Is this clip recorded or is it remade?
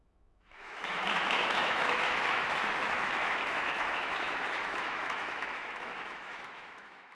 remade